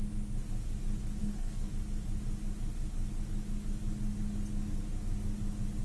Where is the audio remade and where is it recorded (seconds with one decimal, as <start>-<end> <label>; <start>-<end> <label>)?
0.0-1.2 recorded; 1.2-1.7 remade; 1.7-5.8 recorded